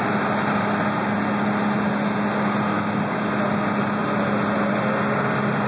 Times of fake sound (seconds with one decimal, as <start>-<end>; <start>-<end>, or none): 2.7-3.3

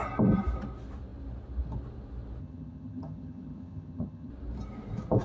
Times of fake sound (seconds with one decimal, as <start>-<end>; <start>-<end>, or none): 2.4-4.3

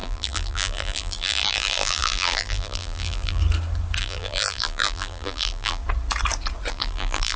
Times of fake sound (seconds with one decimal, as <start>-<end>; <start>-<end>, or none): 0.0-3.4; 4.0-5.8; 6.7-7.4

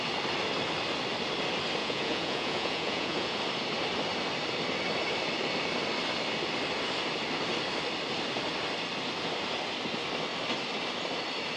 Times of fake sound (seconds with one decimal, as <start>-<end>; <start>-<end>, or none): 1.8-3.4

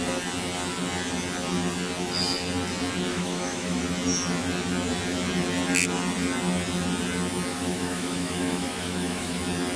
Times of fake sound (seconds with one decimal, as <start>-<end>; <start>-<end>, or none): 3.1-3.8; 7.5-9.4

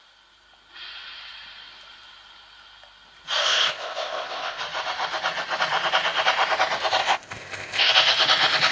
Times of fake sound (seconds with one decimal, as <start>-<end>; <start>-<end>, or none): 3.4-4.6; 7.0-7.9